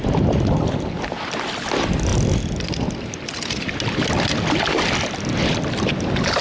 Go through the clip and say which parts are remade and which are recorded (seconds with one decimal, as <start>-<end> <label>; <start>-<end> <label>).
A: 0.0-6.4 recorded